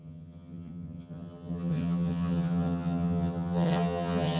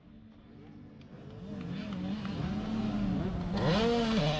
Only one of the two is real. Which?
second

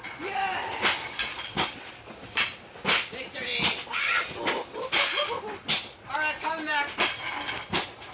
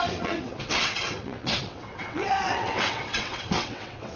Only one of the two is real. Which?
first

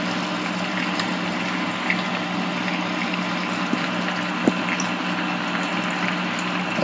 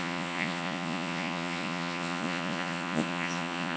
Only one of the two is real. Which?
first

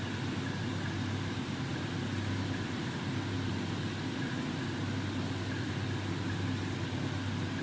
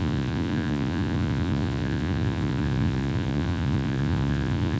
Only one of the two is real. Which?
first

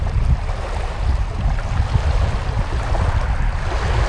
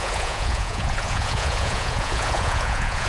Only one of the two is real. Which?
first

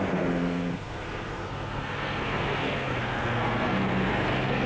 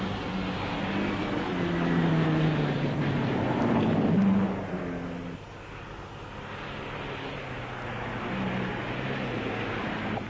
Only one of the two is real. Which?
second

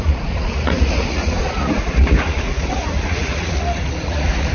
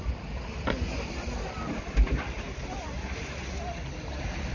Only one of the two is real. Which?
second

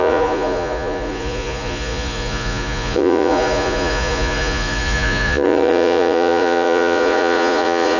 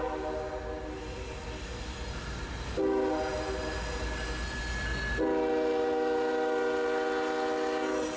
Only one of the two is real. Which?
second